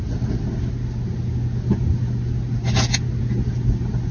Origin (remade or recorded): recorded